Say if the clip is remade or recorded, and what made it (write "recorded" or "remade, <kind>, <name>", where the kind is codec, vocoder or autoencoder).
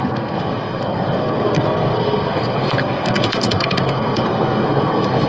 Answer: remade, codec, SNAC